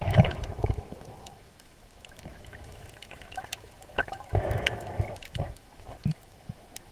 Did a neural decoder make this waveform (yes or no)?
yes